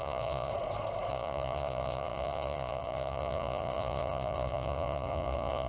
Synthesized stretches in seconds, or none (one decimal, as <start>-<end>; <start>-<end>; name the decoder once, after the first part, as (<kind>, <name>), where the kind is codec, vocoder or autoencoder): 0.0-0.5 (vocoder, Vocos); 1.1-5.7